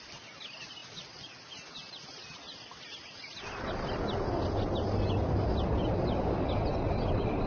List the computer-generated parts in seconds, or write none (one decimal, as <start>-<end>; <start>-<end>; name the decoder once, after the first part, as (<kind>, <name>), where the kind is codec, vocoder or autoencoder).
none